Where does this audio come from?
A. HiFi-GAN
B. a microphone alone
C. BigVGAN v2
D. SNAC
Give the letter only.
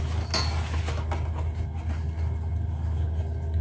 B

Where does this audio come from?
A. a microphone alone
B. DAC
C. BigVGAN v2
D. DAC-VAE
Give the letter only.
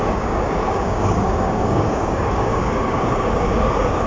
B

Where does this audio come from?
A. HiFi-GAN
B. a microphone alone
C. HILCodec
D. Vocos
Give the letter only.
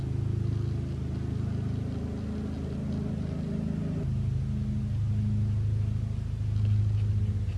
B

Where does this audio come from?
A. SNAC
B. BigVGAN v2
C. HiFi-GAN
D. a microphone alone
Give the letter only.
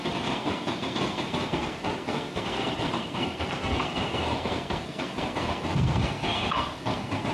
A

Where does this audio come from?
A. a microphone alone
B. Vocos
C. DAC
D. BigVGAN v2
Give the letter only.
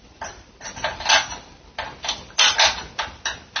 A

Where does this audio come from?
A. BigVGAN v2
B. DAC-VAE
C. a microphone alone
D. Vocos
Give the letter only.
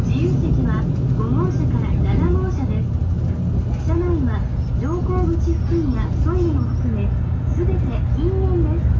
C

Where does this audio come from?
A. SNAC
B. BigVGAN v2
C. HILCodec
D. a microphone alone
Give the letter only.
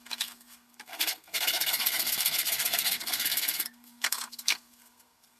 A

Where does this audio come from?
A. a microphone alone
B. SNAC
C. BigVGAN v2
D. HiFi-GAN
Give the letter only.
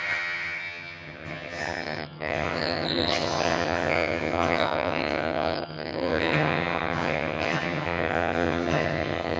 D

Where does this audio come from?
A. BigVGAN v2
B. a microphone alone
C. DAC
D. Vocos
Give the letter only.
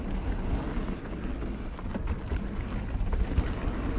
B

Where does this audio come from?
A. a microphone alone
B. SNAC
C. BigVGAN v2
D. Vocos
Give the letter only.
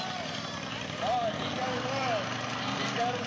A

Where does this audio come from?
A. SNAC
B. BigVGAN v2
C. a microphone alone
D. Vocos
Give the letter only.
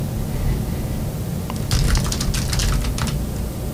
C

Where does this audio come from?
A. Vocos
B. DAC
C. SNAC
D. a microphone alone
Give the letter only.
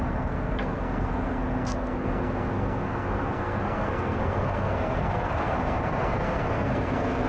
C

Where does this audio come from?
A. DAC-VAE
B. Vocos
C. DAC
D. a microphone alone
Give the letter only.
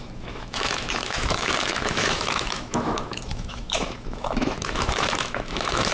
A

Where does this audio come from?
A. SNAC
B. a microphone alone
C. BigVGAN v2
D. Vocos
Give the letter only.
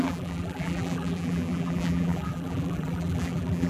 C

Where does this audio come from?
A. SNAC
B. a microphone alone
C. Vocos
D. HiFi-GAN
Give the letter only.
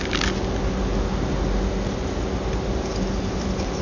B